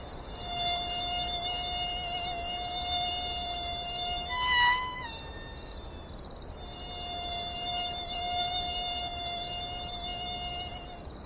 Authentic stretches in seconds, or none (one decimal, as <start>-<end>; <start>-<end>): 0.0-11.3